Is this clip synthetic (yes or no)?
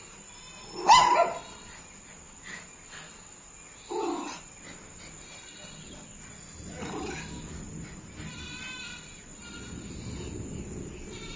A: no